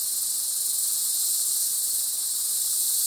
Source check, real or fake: real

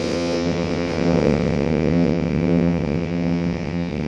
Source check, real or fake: fake